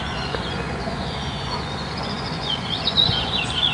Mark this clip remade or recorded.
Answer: remade